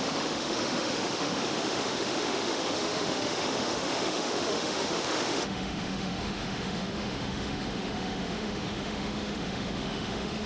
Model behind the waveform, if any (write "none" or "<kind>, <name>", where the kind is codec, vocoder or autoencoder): autoencoder, DAC-VAE